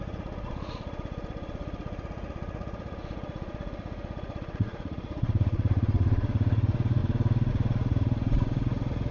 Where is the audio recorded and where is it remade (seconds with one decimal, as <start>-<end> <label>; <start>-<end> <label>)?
0.0-7.0 remade; 7.0-7.5 recorded; 7.5-9.1 remade